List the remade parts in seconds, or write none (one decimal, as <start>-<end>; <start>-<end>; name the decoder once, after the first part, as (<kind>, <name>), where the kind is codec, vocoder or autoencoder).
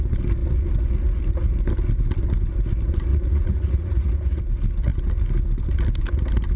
3.1-4.4 (vocoder, Vocos)